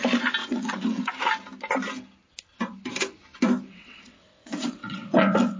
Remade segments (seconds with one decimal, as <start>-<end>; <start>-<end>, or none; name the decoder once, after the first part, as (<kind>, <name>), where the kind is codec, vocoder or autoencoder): 0.4-1.1 (vocoder, WaveNeXt); 3.7-5.6